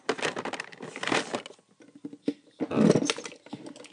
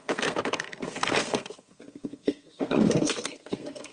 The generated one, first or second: second